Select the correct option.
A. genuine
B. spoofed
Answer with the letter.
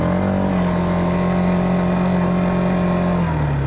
A